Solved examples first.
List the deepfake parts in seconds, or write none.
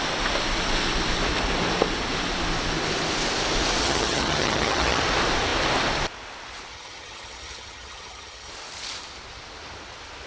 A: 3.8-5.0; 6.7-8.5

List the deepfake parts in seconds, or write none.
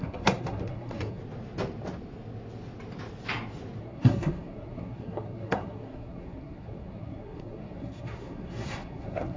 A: 0.0-1.2; 3.8-9.4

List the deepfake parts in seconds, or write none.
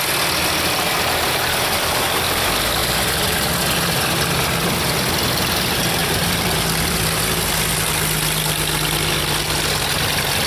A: 2.8-3.6; 6.0-7.2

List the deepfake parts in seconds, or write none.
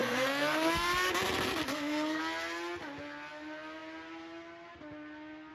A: 0.0-1.1; 1.7-2.2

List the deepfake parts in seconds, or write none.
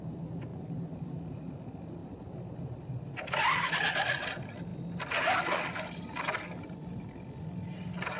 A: 0.5-1.5